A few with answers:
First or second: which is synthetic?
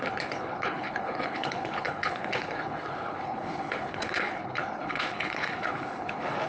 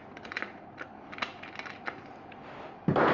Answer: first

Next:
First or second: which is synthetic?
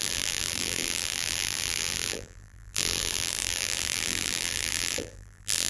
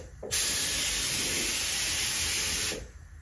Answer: first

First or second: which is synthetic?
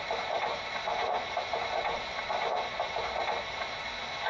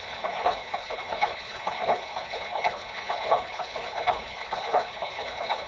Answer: second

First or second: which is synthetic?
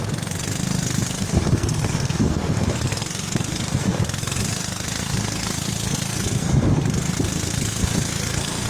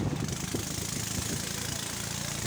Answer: first